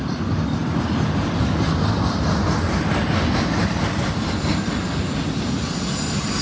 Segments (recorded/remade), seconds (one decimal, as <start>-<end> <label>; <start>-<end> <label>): 0.0-6.4 recorded